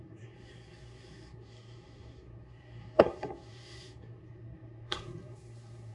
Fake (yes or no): yes